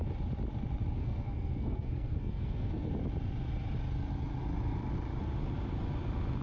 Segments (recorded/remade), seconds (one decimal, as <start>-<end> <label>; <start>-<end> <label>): 0.0-1.0 recorded; 1.0-2.9 remade; 2.9-6.4 recorded